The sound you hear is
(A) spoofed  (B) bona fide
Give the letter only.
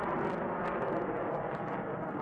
B